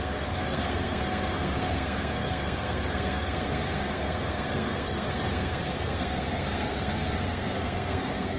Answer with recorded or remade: remade